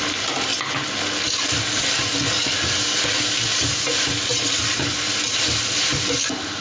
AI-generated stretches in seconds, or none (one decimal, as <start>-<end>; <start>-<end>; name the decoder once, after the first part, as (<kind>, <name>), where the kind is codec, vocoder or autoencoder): none